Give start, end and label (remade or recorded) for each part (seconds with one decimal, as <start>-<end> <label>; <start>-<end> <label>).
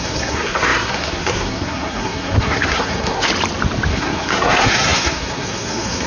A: 0.0-3.3 remade; 3.3-3.9 recorded; 3.9-6.1 remade